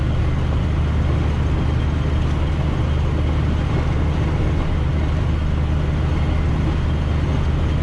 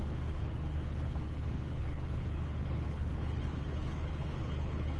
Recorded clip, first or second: first